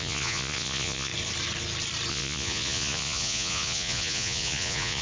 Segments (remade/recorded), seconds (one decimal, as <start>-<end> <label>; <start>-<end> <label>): 0.0-1.1 remade; 1.1-2.1 recorded; 2.1-5.0 remade